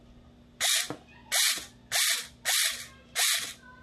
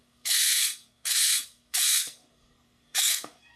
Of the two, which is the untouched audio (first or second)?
first